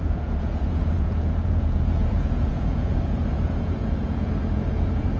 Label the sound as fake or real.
fake